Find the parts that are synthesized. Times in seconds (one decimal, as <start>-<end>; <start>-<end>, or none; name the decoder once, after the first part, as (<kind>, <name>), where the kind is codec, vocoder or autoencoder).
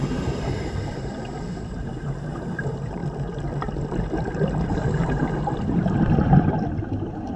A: 0.0-3.0 (vocoder, BigVGAN v2); 6.3-7.4